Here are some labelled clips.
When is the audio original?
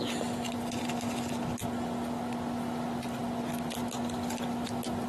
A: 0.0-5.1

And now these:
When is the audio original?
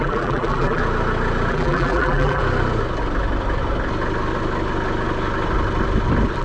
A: 0.8-1.5; 2.4-6.4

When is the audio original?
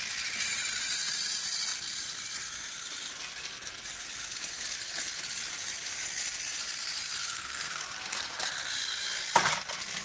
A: 0.0-7.2; 7.8-10.0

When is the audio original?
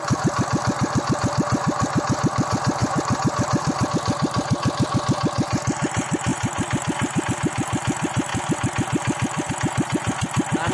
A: 0.0-2.8; 3.9-6.3; 7.2-8.3; 9.5-10.7